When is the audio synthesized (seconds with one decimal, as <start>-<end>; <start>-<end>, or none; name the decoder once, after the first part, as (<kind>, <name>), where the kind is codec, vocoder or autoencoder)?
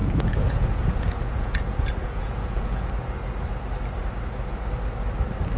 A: 0.0-2.9 (vocoder, Vocos)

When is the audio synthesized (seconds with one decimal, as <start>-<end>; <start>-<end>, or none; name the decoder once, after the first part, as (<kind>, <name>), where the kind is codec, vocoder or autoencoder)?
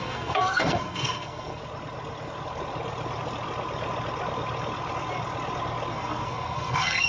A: 0.0-1.6 (codec, SNAC); 5.9-7.1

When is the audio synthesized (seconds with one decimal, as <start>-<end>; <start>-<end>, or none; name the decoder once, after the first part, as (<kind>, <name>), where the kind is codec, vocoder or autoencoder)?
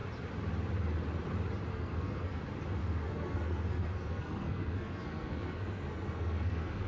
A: 1.7-2.4 (codec, SNAC); 2.8-6.9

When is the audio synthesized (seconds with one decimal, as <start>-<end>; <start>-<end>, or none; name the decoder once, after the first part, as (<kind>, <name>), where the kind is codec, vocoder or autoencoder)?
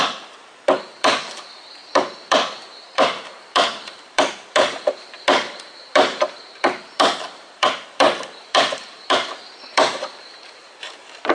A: 0.0-11.3 (vocoder, BigVGAN v2)